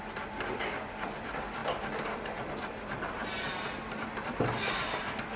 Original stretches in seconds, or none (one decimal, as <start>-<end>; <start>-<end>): 0.0-5.4